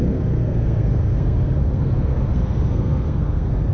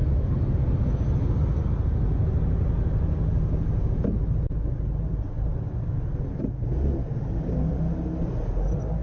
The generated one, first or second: first